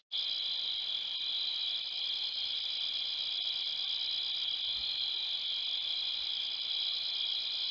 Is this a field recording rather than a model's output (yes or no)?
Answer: yes